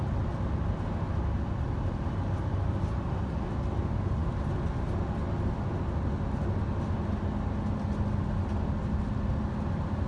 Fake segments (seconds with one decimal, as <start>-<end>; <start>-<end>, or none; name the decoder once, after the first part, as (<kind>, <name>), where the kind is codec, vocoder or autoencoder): none